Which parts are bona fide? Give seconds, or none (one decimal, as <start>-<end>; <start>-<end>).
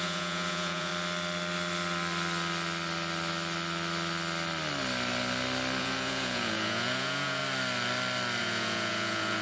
0.9-5.8; 7.4-8.4